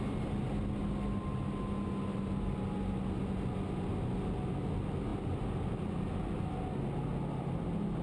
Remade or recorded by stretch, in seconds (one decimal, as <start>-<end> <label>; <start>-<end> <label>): 0.0-8.0 recorded